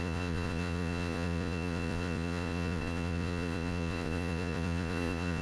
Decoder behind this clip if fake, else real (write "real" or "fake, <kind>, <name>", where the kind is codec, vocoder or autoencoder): fake, vocoder, Vocos